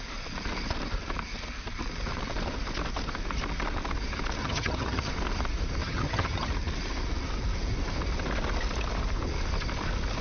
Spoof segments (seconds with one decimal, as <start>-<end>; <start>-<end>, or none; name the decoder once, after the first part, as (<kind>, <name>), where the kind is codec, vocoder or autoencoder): 4.4-5.1 (vocoder, HiFi-GAN); 5.8-6.5